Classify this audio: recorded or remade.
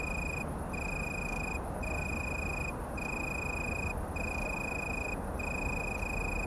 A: recorded